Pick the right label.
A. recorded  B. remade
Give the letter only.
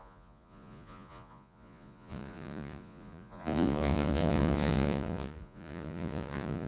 B